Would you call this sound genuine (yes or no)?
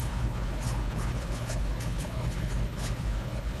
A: no